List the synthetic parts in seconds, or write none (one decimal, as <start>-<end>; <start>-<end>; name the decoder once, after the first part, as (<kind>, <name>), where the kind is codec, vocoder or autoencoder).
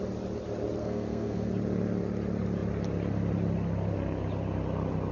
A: 0.8-1.5 (codec, SNAC)